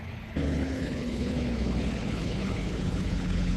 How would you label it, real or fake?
fake